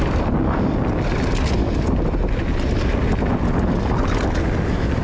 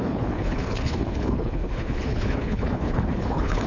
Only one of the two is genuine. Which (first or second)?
first